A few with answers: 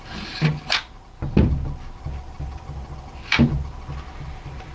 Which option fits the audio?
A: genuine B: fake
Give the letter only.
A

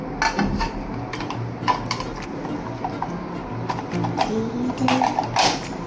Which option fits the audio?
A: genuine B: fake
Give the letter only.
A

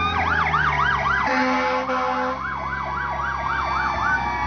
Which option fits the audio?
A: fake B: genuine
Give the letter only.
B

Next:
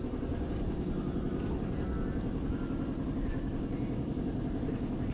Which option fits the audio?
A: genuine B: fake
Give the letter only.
A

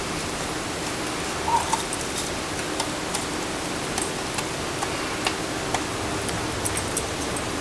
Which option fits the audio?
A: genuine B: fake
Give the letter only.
A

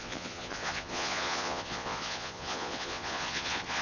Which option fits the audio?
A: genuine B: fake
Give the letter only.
B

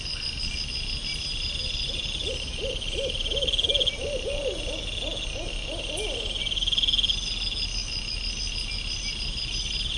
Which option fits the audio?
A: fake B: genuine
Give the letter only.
B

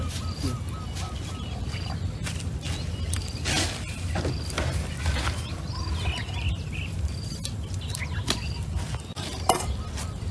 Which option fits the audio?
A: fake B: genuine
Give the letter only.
B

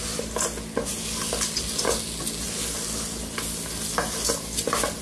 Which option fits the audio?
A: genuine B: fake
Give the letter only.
A